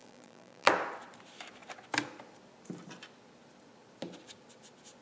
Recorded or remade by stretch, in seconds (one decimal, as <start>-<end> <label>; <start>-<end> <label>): 0.0-0.7 remade; 0.7-5.0 recorded